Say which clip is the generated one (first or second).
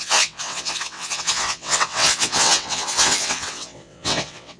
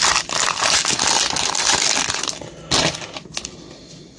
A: first